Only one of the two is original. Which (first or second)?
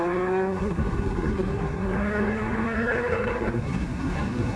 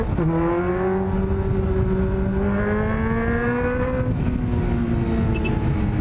second